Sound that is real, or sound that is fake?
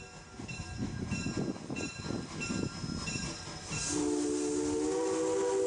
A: real